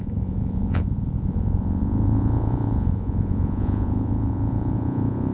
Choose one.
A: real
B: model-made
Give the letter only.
B